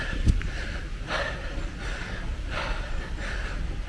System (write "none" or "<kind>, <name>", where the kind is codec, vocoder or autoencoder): none